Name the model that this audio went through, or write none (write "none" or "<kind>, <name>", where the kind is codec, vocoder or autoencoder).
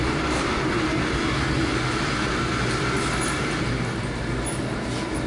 none